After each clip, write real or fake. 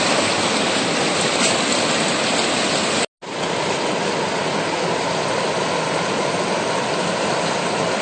real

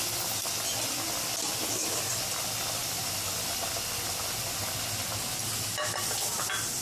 real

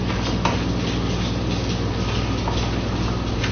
real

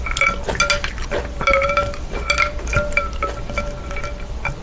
real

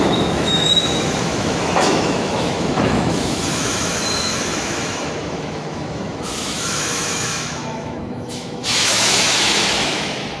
fake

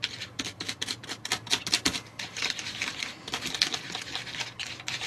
real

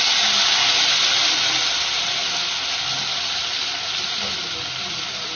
real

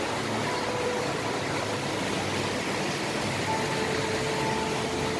real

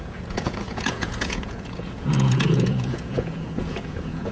fake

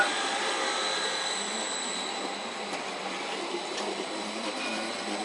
real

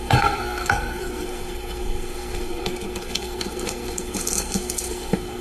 fake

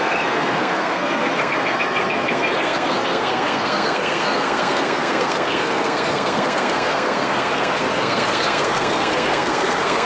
fake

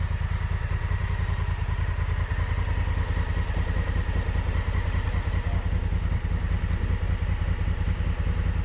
real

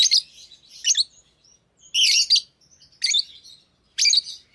real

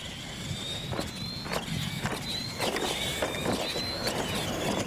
real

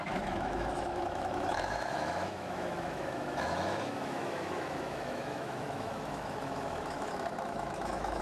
fake